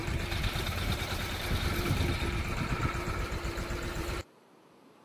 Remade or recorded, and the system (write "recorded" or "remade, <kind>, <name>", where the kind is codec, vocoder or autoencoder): remade, vocoder, BigVGAN v2